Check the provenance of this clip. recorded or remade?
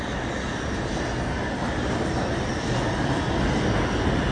recorded